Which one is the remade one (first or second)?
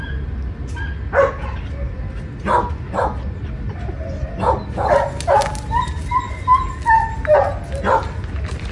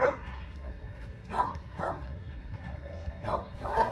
second